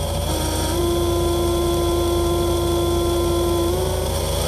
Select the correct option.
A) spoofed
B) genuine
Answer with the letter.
A